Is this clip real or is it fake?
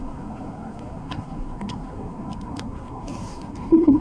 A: fake